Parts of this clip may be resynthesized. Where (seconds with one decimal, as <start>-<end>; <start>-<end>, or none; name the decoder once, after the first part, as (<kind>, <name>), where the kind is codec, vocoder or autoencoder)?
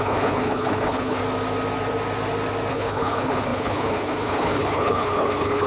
0.0-1.2 (codec, HILCodec); 2.7-5.7